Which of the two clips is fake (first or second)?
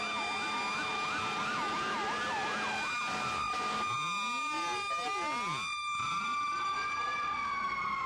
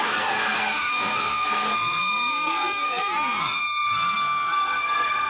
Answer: second